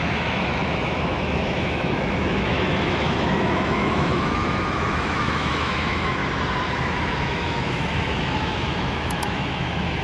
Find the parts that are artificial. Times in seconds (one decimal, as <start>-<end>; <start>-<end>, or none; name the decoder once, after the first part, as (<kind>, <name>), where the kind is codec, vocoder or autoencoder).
0.0-6.2 (autoencoder, DAC-VAE); 6.7-10.0